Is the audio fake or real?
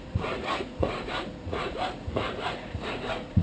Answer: fake